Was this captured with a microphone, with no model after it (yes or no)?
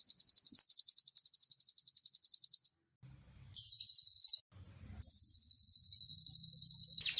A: yes